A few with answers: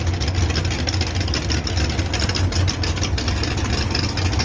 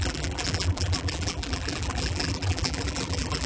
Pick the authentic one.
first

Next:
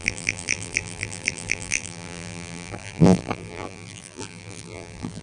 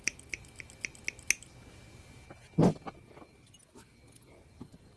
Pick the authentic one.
second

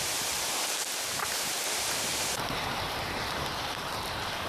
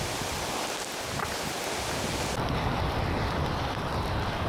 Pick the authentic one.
second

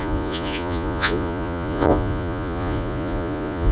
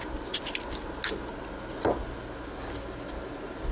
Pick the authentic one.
second